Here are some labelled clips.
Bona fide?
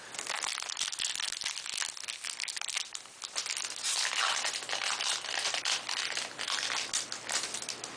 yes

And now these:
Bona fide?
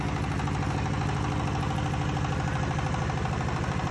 yes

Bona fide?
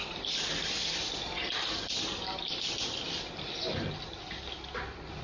yes